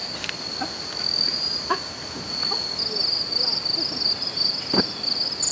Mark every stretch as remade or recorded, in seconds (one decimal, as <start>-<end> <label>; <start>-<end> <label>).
0.0-5.5 recorded